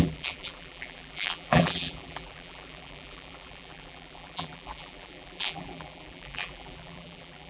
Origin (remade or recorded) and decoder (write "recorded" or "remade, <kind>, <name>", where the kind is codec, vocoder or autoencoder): remade, vocoder, BigVGAN v2